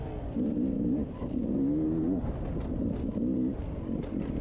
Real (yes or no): yes